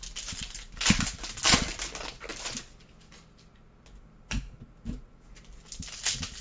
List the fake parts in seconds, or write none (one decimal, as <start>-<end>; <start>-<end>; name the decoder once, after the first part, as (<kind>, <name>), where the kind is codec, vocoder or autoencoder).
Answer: none